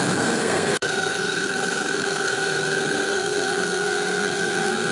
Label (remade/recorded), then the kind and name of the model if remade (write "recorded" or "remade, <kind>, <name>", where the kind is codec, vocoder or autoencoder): remade, codec, SNAC